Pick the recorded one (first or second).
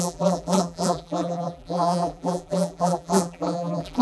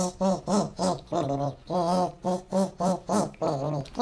second